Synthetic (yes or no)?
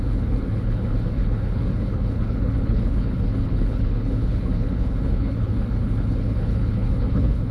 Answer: yes